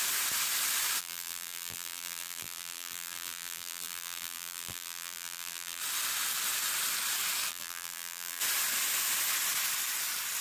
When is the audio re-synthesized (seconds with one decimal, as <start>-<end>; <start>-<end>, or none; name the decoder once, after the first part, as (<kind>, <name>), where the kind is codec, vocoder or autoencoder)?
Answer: 1.0-5.8 (vocoder, BigVGAN v2); 7.5-8.4